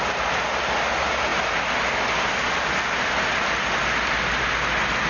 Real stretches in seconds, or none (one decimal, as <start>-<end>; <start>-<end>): 0.0-5.1

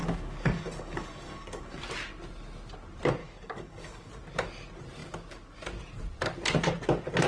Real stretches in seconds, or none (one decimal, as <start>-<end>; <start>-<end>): 1.8-3.2; 4.1-7.3

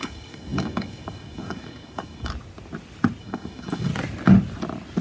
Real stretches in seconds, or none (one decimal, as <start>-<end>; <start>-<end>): 2.3-3.2; 3.9-5.0

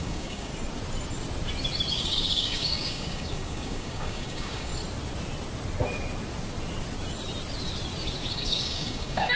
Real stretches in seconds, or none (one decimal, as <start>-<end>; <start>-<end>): 0.5-1.9; 4.7-8.3

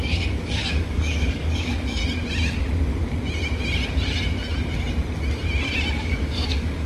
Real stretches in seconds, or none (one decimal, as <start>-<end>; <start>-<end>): 2.0-5.9

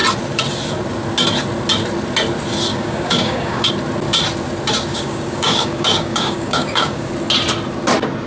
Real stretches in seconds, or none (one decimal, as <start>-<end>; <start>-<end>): 0.0-2.7; 3.7-4.9; 7.1-8.3

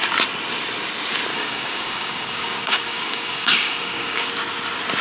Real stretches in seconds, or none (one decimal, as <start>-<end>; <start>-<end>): 0.0-1.3; 4.3-5.0

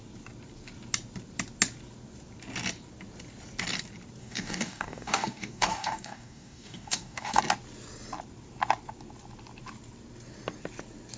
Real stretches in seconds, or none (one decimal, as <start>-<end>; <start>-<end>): 0.0-4.2; 7.4-11.2